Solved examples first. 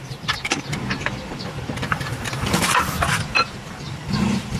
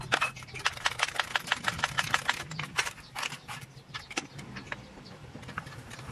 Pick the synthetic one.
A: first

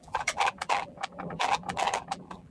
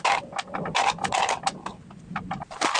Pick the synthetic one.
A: first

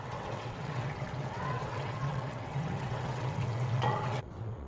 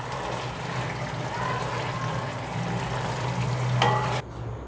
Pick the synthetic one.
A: first